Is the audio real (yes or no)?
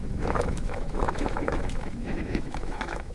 no